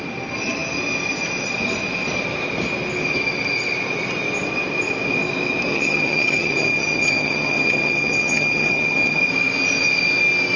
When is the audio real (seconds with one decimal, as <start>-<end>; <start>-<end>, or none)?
0.0-5.7; 9.2-10.6